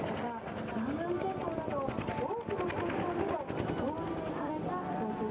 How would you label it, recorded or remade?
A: recorded